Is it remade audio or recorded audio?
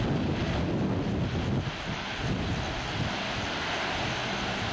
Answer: recorded